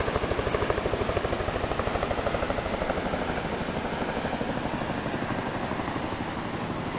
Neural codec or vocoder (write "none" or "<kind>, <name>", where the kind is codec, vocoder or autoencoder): none